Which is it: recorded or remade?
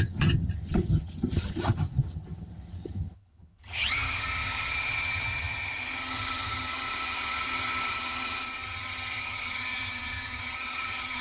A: remade